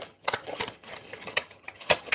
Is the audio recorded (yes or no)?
no